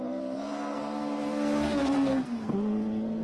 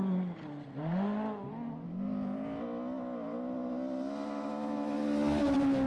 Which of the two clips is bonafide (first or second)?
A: second